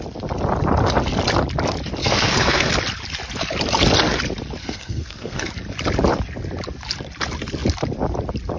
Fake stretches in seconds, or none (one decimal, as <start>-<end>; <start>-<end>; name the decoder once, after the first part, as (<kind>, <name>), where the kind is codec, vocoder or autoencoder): 2.0-2.7 (codec, SNAC); 4.6-5.5